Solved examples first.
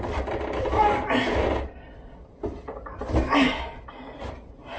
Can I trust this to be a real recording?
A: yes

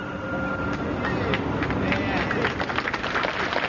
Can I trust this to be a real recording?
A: yes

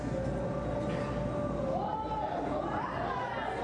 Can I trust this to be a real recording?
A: yes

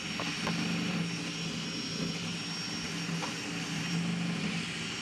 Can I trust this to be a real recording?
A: yes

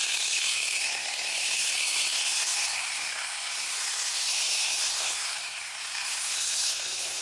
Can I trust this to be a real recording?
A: no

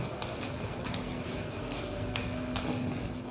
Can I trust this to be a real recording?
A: no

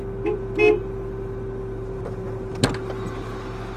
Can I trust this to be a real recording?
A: yes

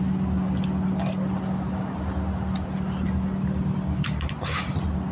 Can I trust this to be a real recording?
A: yes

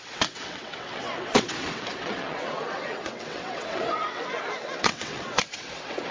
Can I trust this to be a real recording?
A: no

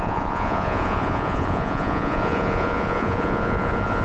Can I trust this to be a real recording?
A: no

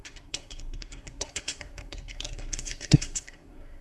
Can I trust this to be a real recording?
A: no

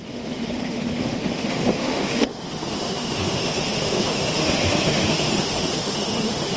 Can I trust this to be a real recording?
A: no